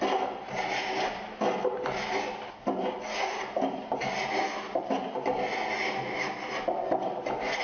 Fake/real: real